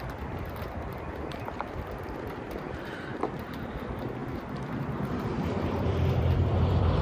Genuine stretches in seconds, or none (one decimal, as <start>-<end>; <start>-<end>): 3.1-3.8